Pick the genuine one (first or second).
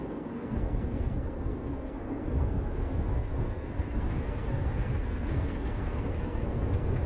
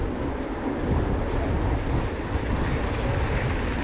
second